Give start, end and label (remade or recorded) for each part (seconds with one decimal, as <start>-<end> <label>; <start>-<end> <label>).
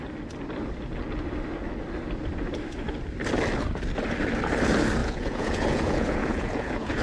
0.0-5.0 recorded; 5.0-7.0 remade